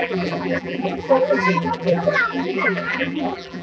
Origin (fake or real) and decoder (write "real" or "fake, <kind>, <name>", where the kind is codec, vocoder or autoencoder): fake, vocoder, BigVGAN v2